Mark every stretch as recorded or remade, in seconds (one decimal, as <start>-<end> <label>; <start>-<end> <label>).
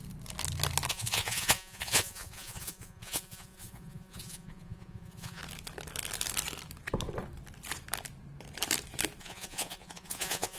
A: 0.0-0.9 recorded; 0.9-5.4 remade; 5.4-9.2 recorded; 9.2-10.6 remade